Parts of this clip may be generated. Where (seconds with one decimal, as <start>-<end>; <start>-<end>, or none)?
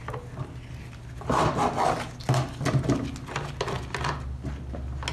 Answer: none